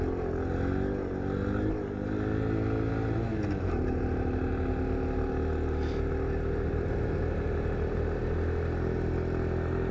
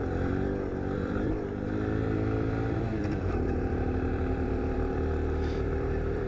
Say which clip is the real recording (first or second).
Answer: first